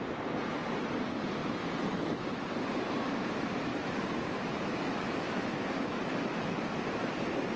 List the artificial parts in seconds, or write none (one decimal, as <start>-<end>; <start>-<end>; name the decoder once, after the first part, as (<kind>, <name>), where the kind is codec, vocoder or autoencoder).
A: 1.4-2.5 (autoencoder, DAC-VAE); 3.7-6.6